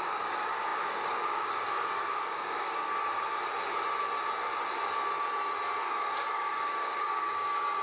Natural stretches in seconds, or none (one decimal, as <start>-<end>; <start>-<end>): 2.9-5.8